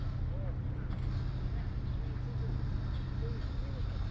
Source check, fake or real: real